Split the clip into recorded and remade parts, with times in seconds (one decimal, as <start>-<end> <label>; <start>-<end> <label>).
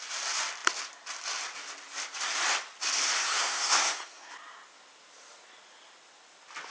0.0-3.2 recorded; 3.2-4.3 remade; 4.3-6.7 recorded